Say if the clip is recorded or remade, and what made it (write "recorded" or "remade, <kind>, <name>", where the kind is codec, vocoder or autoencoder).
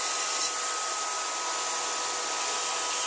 recorded